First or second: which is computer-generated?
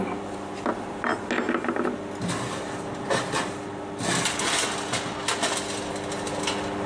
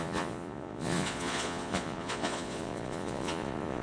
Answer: second